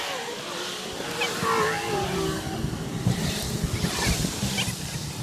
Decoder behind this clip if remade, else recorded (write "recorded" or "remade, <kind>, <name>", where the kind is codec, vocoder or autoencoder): recorded